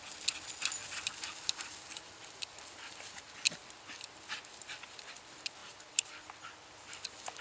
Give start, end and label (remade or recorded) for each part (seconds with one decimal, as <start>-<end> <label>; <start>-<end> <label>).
0.0-5.6 recorded; 5.6-6.1 remade; 6.1-7.4 recorded